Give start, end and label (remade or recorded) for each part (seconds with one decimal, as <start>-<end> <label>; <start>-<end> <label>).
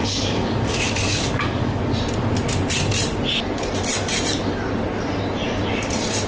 0.0-1.8 remade; 1.8-6.3 recorded